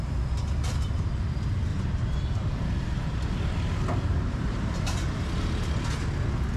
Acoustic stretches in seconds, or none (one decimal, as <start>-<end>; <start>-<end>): 0.0-1.7; 3.3-4.1; 5.6-6.6